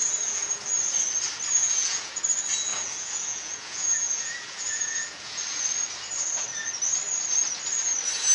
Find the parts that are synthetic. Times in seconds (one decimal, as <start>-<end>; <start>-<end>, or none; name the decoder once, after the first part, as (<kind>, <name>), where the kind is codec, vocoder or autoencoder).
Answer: 0.0-0.7 (vocoder, Vocos); 1.5-2.2; 2.7-5.4